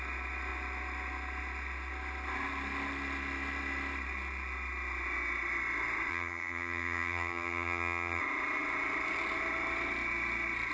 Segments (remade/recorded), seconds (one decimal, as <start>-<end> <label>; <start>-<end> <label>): 0.0-6.1 recorded; 6.1-8.2 remade; 8.2-10.7 recorded